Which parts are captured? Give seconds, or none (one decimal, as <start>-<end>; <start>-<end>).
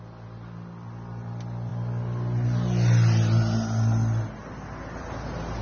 0.0-5.6